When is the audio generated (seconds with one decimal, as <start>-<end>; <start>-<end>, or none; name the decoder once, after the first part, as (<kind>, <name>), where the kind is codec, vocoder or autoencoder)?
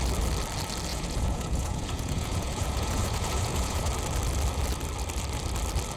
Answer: 0.9-3.9 (vocoder, Vocos)